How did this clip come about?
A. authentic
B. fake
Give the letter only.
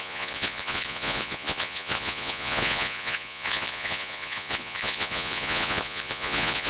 B